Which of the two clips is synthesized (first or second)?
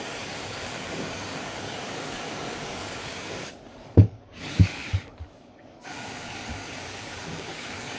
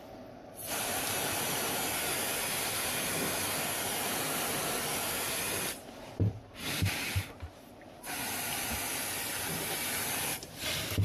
first